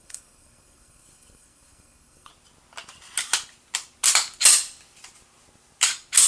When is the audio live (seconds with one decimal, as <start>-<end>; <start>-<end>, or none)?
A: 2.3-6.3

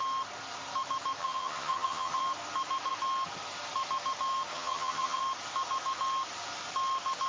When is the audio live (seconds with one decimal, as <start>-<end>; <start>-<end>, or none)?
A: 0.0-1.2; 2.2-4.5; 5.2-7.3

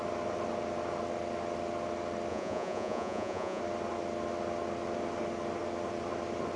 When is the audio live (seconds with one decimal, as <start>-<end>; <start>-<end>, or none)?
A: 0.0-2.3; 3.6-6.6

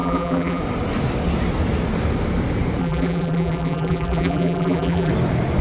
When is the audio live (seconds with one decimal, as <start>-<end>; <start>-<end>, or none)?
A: 0.6-2.8; 5.1-5.6

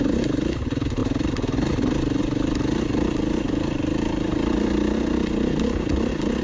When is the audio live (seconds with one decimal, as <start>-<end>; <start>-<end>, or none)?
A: 0.0-6.4

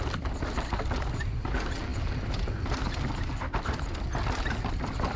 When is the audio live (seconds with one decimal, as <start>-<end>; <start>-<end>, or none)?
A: 0.0-5.2

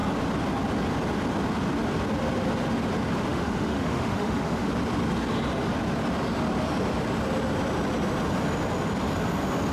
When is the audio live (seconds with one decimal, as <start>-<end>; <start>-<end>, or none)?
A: 0.0-3.3; 4.7-9.7

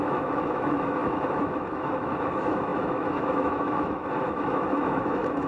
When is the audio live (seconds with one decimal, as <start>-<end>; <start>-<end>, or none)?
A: none